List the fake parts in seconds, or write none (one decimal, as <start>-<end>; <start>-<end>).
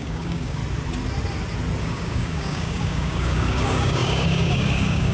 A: 0.0-0.6; 1.8-5.1